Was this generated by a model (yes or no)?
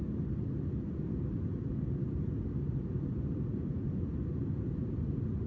yes